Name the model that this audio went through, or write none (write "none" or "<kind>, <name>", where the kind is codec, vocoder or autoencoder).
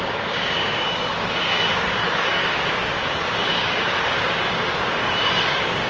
codec, DAC